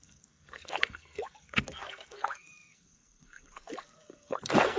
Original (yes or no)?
no